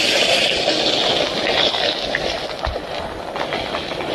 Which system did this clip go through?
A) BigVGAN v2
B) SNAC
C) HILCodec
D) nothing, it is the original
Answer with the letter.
D